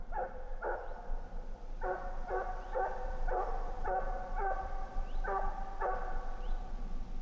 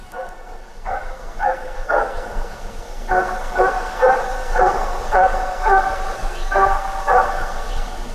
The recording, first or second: first